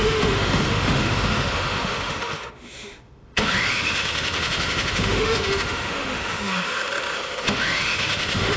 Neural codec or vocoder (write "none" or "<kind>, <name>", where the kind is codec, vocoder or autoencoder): autoencoder, DAC-VAE